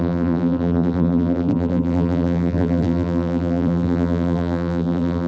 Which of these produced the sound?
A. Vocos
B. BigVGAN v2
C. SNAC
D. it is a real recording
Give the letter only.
B